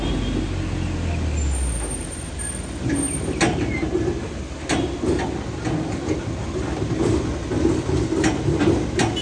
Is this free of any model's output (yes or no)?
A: yes